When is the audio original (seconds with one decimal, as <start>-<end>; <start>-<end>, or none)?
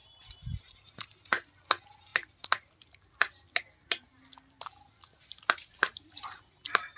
0.6-7.0